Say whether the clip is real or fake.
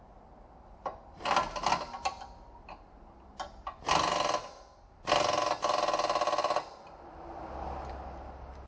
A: real